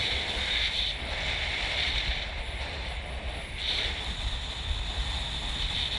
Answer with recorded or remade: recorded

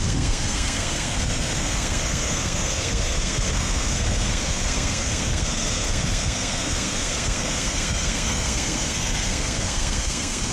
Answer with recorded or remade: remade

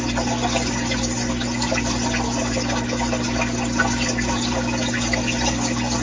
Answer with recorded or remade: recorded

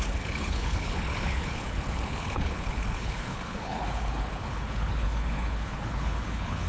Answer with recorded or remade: remade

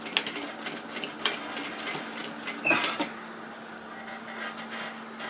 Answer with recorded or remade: recorded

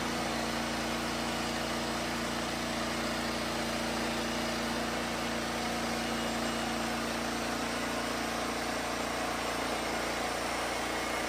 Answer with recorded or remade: recorded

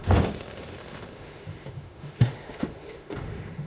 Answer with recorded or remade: remade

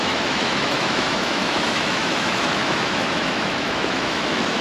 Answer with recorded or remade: remade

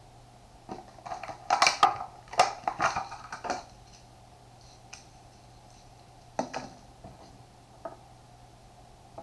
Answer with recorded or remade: recorded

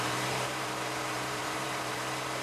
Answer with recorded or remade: remade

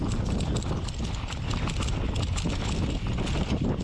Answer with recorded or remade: recorded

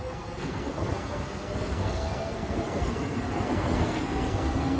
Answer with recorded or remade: remade